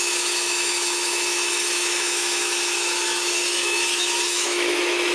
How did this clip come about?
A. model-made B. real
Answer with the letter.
A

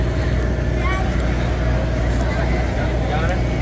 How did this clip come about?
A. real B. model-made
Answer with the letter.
A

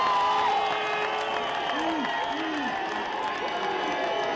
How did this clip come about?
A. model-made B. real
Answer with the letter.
B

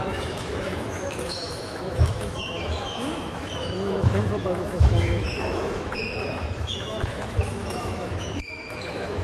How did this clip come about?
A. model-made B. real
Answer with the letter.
A